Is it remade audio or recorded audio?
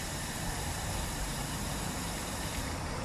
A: remade